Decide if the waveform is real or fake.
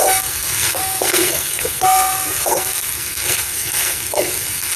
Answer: fake